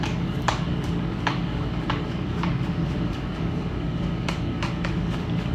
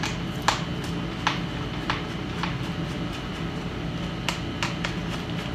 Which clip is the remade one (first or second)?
first